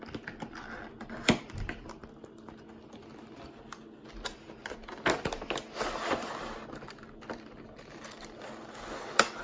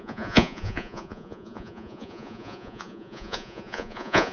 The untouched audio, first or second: first